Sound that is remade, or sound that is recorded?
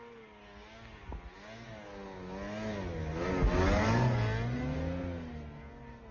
recorded